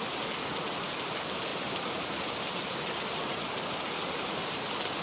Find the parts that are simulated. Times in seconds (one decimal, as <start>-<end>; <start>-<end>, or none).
1.5-4.5